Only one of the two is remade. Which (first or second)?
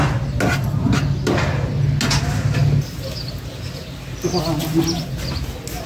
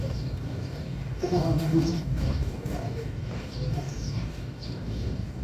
second